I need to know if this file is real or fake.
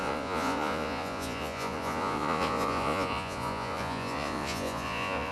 fake